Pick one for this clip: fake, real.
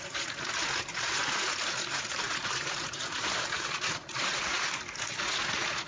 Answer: fake